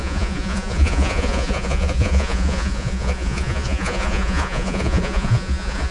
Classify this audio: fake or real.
fake